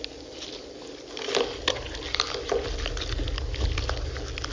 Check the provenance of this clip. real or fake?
real